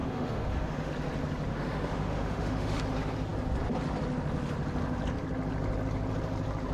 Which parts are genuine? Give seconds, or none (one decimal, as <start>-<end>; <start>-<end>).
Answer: 0.9-1.5; 2.8-6.7